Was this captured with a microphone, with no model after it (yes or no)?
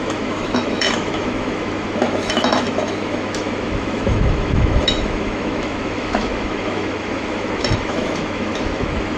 no